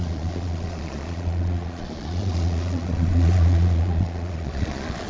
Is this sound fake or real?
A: fake